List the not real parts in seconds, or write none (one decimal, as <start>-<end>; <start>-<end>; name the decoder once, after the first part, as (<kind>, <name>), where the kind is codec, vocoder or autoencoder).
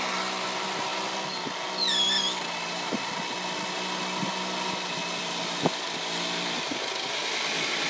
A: none